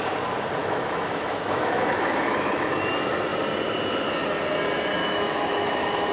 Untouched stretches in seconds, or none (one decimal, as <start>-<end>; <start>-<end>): 0.0-0.6; 2.7-5.0